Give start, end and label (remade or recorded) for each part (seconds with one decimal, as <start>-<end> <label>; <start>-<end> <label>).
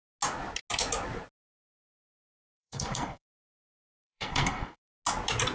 0.0-2.1 recorded; 2.1-4.9 remade; 4.9-5.5 recorded